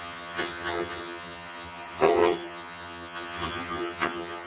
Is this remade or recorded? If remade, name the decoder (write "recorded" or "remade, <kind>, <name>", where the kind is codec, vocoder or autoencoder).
remade, vocoder, HiFi-GAN